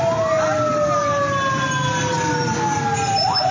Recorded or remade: recorded